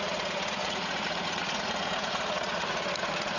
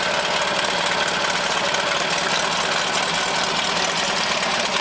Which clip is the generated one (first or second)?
first